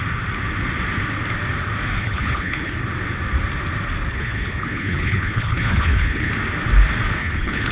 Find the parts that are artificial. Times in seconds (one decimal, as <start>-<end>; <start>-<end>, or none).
2.0-2.8; 4.1-6.3; 7.2-7.7

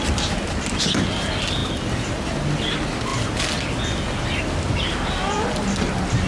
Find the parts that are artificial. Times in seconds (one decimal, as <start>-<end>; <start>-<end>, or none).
none

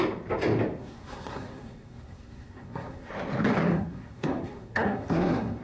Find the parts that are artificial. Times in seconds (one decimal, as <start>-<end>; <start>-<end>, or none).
0.8-3.1; 3.6-5.6

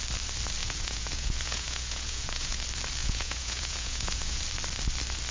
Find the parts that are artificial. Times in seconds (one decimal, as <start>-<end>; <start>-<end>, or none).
0.6-2.6; 3.0-4.4

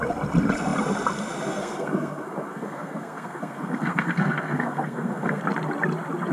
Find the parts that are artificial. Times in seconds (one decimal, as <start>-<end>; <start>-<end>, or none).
1.6-5.4

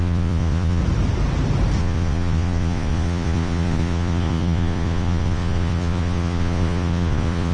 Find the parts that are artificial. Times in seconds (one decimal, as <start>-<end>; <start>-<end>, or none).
0.0-0.8; 1.8-7.5